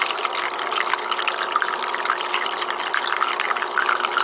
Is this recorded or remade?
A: recorded